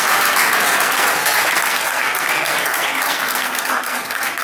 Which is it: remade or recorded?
remade